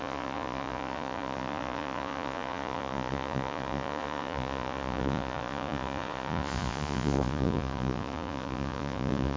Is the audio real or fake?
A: fake